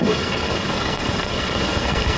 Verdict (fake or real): fake